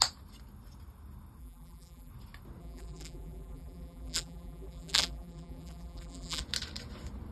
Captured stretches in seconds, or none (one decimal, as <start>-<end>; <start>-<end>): 0.0-1.4; 2.1-2.6; 6.4-7.3